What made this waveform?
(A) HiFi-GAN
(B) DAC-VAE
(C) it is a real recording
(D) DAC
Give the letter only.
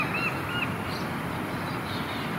C